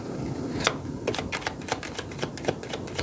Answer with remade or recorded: remade